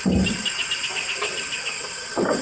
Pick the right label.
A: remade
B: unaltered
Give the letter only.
B